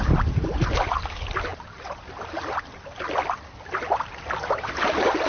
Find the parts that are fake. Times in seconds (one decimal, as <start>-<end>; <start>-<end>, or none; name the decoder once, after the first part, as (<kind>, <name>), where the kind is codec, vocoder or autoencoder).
none